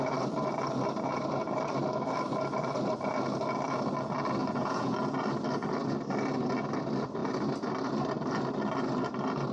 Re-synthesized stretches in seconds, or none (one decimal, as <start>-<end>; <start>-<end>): 4.4-4.9